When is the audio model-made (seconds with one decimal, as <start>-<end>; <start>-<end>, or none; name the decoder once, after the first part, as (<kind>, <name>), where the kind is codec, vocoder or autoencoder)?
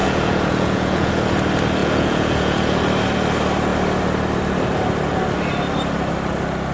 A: 0.0-1.1 (vocoder, Vocos); 1.8-2.8